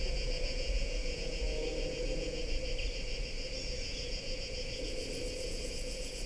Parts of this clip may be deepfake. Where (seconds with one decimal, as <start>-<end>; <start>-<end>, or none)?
0.0-2.4; 3.6-6.3